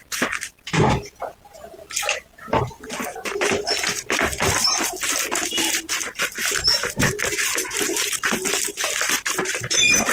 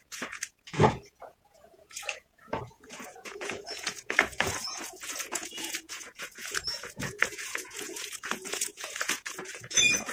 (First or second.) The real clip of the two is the first